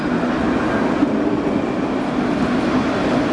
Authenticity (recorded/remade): recorded